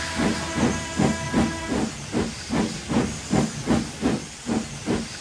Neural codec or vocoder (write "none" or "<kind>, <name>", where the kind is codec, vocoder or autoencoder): none